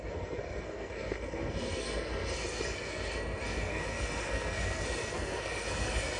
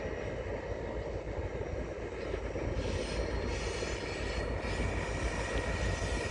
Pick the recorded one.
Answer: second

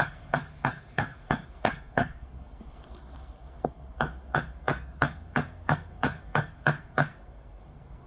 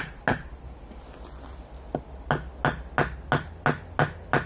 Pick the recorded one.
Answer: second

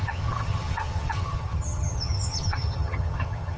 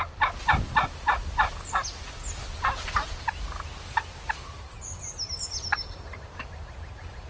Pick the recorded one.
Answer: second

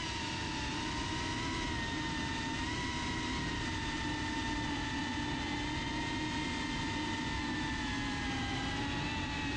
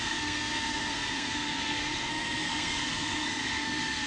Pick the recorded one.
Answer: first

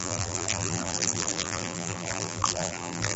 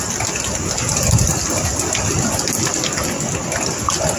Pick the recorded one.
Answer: second